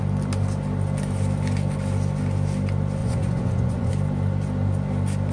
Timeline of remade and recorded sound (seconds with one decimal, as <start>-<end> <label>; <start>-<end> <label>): 0.0-3.0 recorded; 3.0-3.9 remade; 3.9-5.3 recorded